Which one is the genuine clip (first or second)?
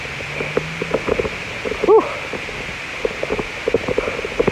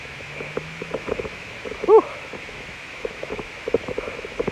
first